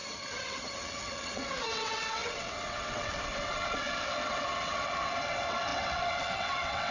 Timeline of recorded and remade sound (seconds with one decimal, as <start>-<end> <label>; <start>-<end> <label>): 0.0-6.9 remade